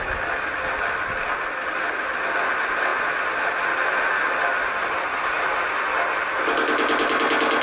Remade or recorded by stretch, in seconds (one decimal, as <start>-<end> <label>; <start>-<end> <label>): 0.0-7.6 recorded

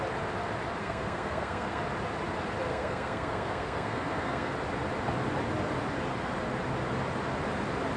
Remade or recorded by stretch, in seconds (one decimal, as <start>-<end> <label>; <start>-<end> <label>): 0.0-0.8 recorded; 0.8-1.8 remade; 1.8-2.7 recorded; 2.7-4.5 remade; 4.5-8.0 recorded

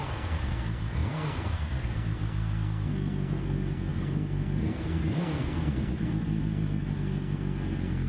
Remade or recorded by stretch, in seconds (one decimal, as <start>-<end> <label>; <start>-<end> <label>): 0.0-8.1 remade

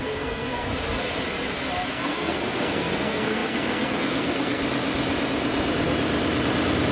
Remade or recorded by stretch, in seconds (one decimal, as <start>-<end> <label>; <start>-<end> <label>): 0.0-0.7 remade; 0.7-1.9 recorded; 1.9-4.6 remade; 4.6-6.9 recorded

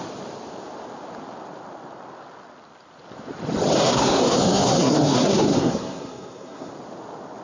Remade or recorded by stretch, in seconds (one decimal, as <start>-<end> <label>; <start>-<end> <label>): 0.0-3.8 recorded; 3.8-6.7 remade; 6.7-7.4 recorded